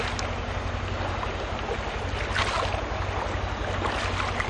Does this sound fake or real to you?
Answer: real